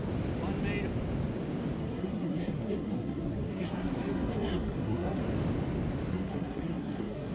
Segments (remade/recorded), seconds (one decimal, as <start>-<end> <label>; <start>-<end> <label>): 0.0-1.8 recorded; 1.8-5.2 remade; 5.2-6.1 recorded; 6.1-7.3 remade